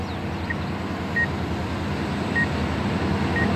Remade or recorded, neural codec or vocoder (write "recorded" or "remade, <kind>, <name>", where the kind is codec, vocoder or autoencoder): recorded